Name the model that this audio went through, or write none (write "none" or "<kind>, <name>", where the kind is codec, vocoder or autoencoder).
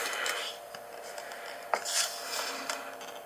none